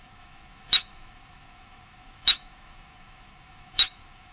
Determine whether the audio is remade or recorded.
remade